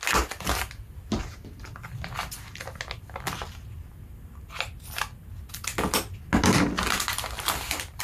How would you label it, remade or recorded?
recorded